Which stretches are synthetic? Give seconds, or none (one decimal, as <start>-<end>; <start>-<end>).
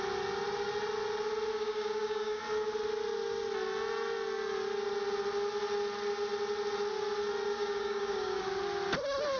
1.5-2.4; 7.5-8.4